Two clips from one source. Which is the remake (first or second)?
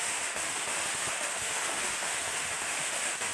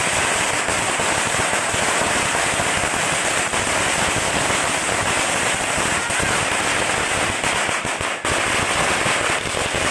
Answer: first